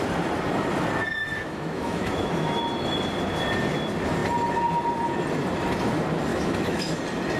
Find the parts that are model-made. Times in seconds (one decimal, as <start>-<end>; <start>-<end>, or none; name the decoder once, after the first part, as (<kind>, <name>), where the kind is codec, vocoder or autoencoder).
1.2-2.6 (autoencoder, DAC-VAE); 6.3-7.0